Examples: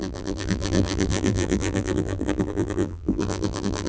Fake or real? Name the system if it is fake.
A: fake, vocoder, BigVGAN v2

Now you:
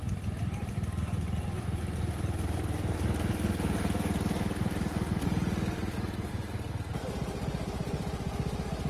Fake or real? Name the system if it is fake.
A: real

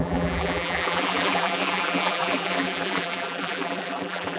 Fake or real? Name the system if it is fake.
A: fake, vocoder, BigVGAN v2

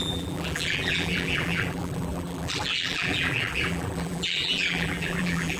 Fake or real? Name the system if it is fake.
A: fake, vocoder, BigVGAN v2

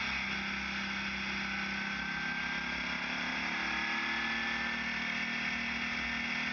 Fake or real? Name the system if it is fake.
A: real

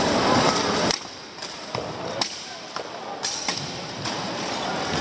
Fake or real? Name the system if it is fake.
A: fake, vocoder, BigVGAN v2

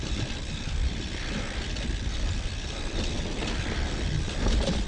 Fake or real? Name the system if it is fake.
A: fake, vocoder, BigVGAN v2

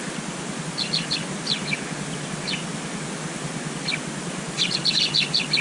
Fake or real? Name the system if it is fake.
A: real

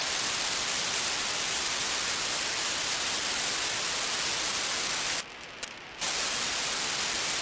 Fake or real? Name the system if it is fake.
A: real